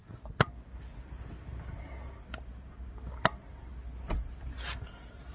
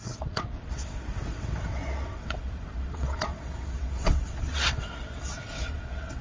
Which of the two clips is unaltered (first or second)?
first